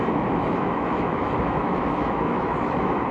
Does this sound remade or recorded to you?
remade